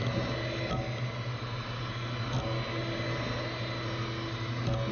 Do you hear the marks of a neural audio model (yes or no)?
no